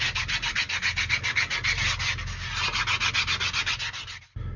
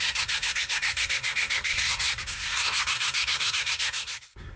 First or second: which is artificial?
second